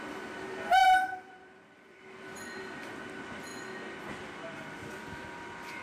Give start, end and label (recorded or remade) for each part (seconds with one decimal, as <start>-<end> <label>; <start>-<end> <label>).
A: 0.0-0.8 recorded; 0.8-2.0 remade; 2.0-5.8 recorded